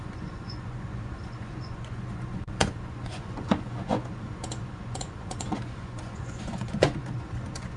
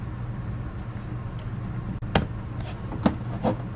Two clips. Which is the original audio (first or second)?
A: second